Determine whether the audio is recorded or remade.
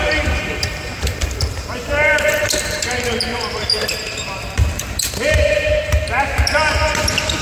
remade